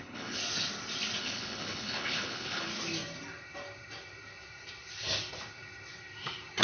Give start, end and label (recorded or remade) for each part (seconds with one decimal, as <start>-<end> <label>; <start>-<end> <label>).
0.0-0.4 remade; 0.4-1.2 recorded; 1.2-2.7 remade; 2.7-6.6 recorded